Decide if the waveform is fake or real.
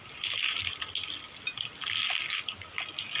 real